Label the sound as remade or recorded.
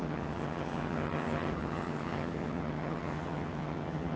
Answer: remade